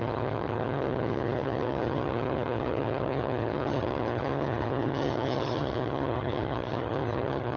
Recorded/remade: remade